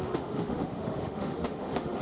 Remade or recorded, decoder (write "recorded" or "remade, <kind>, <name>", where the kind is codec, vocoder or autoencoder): remade, autoencoder, DAC-VAE